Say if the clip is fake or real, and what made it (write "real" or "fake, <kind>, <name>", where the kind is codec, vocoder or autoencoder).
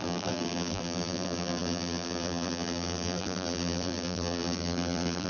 fake, vocoder, BigVGAN v2